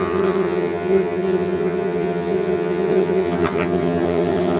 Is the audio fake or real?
fake